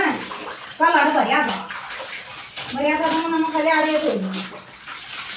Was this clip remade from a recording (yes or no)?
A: no